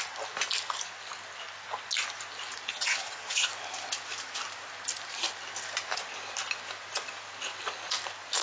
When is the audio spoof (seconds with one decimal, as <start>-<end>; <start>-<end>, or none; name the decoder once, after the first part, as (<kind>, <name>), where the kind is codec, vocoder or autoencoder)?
2.7-3.5 (vocoder, HiFi-GAN)